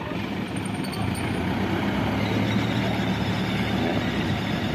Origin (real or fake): real